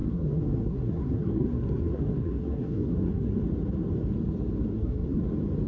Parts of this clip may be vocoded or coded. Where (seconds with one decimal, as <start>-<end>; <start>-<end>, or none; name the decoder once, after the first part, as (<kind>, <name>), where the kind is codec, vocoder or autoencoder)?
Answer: 0.0-3.4 (codec, SNAC); 4.7-5.2